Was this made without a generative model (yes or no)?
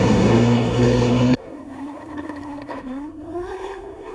no